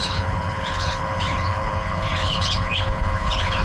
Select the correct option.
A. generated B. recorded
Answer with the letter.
A